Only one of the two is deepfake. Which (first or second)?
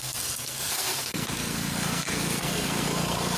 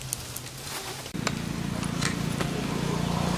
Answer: first